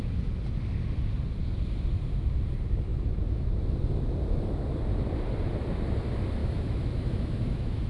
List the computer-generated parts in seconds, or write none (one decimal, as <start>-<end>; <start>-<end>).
2.9-3.7; 6.4-7.9